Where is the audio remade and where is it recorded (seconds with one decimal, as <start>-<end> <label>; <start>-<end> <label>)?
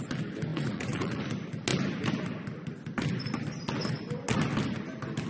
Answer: 0.0-0.5 recorded; 0.5-1.2 remade; 1.2-5.3 recorded